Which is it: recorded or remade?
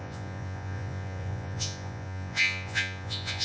remade